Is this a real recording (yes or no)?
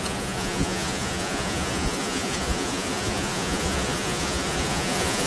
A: no